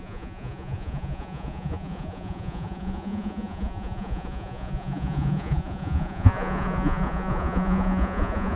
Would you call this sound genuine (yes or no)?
no